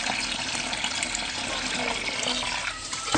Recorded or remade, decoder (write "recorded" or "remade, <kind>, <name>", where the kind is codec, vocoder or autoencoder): recorded